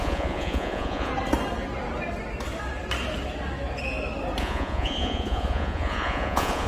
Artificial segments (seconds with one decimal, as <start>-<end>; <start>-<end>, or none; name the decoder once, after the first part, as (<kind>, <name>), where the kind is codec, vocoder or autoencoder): 0.0-1.1 (vocoder, Vocos); 4.4-6.7

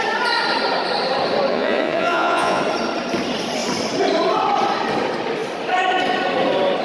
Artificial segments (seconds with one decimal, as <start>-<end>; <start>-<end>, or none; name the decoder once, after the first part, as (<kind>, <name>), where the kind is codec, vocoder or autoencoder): 1.5-2.6 (vocoder, Vocos)

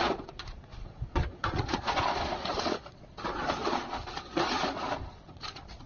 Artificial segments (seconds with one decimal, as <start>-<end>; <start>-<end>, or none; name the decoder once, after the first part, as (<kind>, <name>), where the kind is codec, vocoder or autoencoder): 0.0-5.9 (vocoder, Vocos)

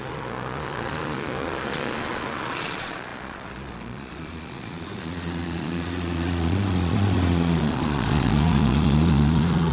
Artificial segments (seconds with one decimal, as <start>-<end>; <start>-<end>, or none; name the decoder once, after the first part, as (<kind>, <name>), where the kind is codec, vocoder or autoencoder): 0.0-9.7 (vocoder, Vocos)

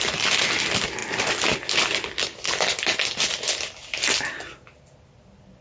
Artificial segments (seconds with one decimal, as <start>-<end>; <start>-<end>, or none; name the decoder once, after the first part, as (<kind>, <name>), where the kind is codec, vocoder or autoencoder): none